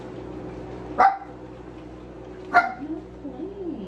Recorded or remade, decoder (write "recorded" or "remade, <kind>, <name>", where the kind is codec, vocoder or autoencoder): recorded